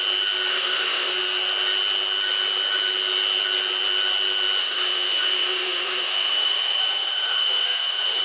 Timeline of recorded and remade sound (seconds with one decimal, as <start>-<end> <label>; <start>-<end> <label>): 0.0-0.5 recorded; 0.5-1.1 remade; 1.1-4.6 recorded; 4.6-8.2 remade